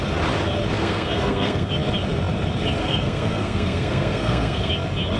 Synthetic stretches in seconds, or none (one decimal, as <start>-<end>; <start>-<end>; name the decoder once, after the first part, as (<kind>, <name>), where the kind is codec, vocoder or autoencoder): 0.8-1.7 (codec, SNAC); 2.8-4.7

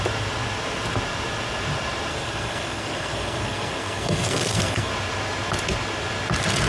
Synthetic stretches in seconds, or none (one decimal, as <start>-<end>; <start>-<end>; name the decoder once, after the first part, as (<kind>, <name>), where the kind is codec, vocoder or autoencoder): 2.1-4.9 (codec, SNAC)

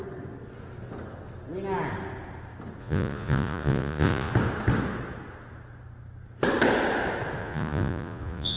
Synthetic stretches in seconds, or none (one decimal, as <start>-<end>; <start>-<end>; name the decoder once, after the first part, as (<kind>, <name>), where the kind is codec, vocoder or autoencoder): 2.8-4.3 (vocoder, Vocos); 7.4-8.6

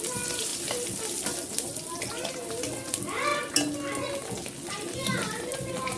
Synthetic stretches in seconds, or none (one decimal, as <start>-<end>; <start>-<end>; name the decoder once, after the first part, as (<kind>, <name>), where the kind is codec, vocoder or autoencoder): 0.0-3.3 (vocoder, BigVGAN v2); 4.7-6.0